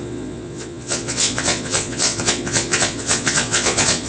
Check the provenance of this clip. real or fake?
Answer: fake